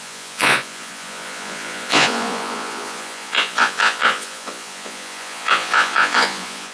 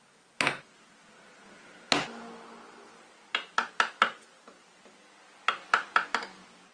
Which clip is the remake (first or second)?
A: first